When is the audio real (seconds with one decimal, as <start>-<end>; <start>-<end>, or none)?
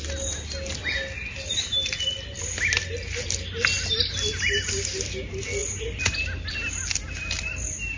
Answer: 0.0-8.0